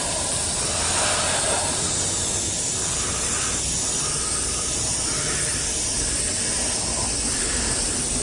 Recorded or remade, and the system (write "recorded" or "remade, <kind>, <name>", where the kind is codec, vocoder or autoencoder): recorded